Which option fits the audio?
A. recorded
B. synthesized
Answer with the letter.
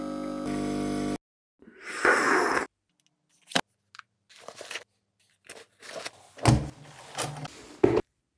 A